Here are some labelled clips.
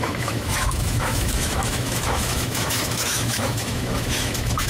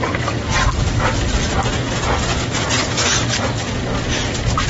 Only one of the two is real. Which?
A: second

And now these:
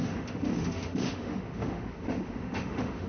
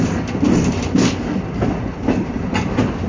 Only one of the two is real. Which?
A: second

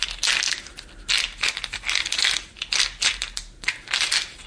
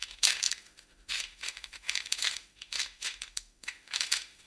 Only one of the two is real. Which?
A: first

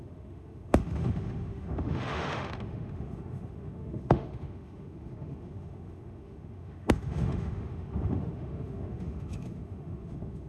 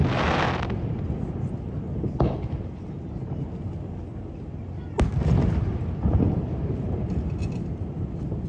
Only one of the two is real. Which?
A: second